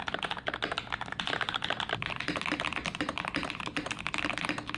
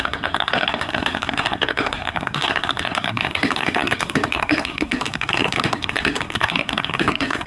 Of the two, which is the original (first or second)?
first